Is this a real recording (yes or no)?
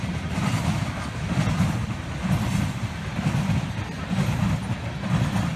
no